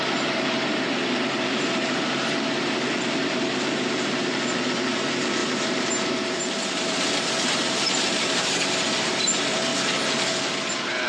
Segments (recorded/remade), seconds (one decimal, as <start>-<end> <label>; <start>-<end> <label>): 0.0-9.7 remade; 9.7-10.7 recorded; 10.7-11.1 remade